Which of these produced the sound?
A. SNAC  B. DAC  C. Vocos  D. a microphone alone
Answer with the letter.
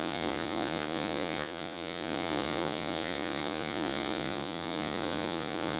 C